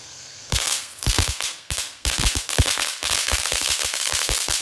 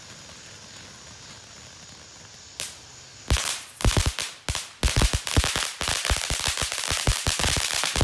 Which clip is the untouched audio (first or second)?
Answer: second